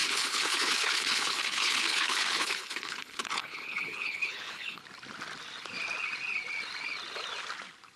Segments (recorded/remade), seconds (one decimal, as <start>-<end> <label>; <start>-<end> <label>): 0.0-4.8 remade; 4.8-8.0 recorded